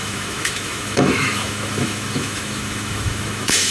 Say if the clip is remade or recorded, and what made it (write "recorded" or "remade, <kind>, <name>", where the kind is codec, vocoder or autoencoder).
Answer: remade, autoencoder, DAC-VAE